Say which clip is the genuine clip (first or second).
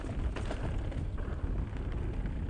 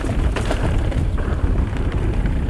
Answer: first